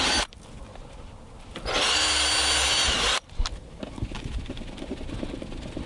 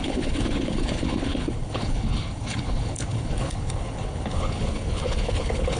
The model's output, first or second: second